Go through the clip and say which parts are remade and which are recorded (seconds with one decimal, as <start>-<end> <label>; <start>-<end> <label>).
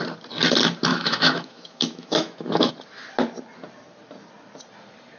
0.0-0.9 recorded; 0.9-2.7 remade; 2.7-5.2 recorded